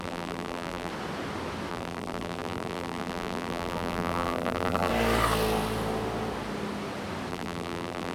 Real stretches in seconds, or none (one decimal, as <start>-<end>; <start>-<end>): 0.9-1.7; 4.9-7.3

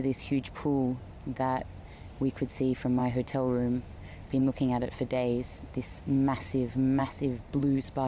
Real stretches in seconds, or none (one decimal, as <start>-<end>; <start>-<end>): 0.0-8.1

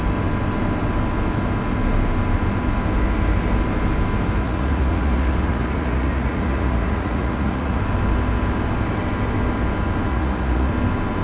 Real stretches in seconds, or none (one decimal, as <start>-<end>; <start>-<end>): 0.0-4.4; 7.8-10.1; 10.7-11.2

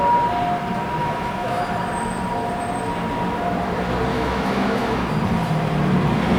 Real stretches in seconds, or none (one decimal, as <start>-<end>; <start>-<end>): 0.0-1.0; 1.6-4.1; 5.1-6.4

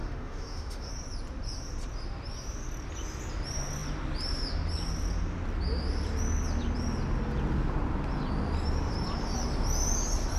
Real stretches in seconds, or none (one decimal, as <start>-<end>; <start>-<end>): 0.9-10.4